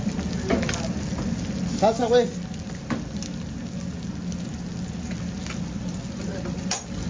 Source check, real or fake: real